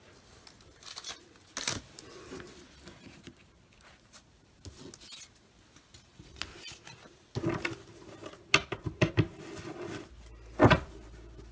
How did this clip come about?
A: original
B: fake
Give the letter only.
A